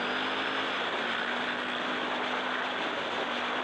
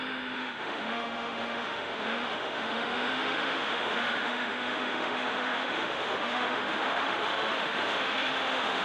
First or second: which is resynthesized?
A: second